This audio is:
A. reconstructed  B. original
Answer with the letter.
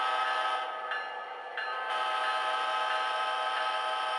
B